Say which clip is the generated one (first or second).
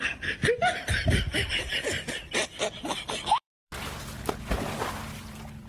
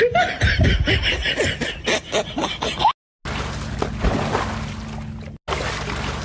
first